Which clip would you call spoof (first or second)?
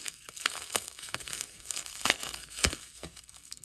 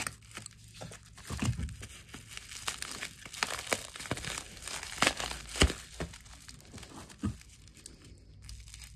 first